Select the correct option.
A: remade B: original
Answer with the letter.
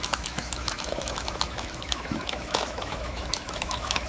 A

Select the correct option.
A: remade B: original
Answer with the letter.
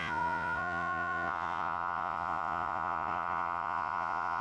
A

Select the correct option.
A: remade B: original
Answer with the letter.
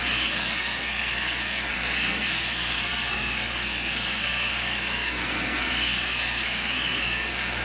A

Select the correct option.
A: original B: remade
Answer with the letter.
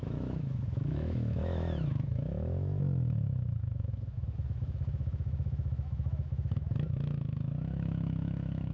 B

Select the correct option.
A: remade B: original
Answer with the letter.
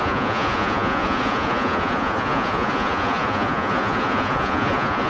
A